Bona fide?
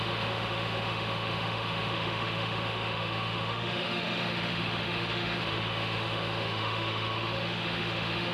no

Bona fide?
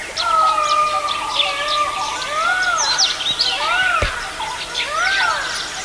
yes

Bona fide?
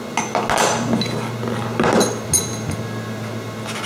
yes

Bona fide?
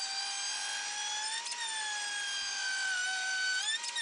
yes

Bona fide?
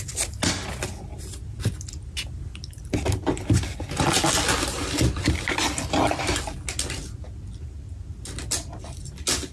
yes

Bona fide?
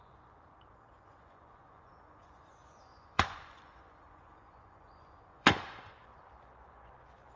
no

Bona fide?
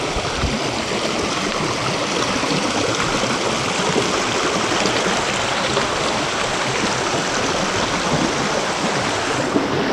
yes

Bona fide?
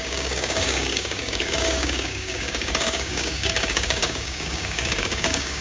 no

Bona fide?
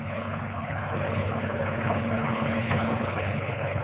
no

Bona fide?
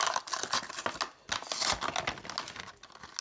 yes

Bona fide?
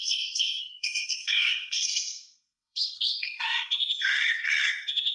no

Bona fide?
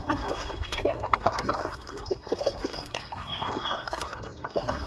no